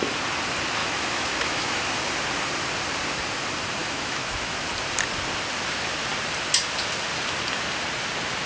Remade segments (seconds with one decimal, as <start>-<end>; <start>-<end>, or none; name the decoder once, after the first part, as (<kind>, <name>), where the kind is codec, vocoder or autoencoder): 0.8-1.8 (autoencoder, DAC-VAE); 3.8-4.7